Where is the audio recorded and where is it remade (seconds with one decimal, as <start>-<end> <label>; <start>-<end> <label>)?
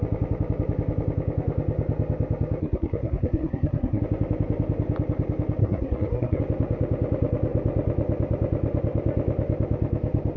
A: 0.0-2.6 recorded; 2.6-4.0 remade; 4.0-5.6 recorded; 5.6-6.4 remade; 6.4-10.4 recorded